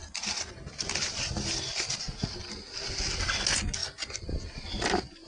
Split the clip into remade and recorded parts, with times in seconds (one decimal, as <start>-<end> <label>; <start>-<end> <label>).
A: 0.0-5.3 recorded